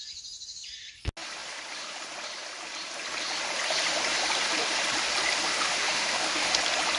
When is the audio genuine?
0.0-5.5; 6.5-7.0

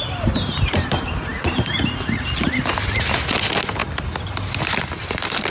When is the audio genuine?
0.0-5.5

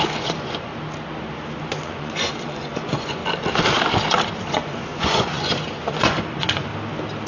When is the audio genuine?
0.7-1.6; 3.2-4.5; 6.7-7.3

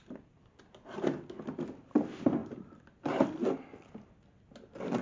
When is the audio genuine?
0.0-5.0

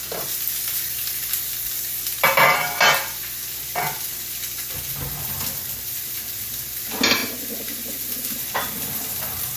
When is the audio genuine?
0.0-0.6; 1.3-9.6